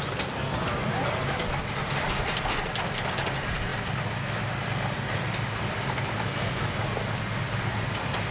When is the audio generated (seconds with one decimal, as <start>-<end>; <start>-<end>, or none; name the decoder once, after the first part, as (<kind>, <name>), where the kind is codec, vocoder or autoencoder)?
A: none